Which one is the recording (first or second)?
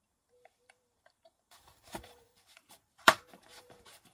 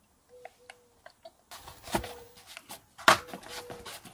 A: second